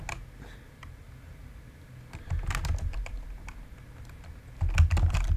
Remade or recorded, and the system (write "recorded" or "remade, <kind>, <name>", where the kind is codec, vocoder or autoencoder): recorded